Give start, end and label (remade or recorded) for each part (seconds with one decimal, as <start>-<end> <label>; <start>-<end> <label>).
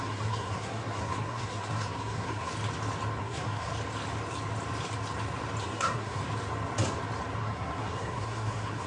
0.0-2.5 remade; 2.5-3.2 recorded; 3.2-3.7 remade; 3.7-5.6 recorded; 5.6-6.2 remade; 6.2-7.4 recorded; 7.4-8.9 remade